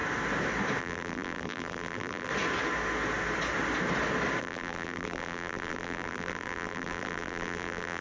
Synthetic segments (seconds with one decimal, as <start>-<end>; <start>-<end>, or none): 0.8-2.3; 4.4-8.0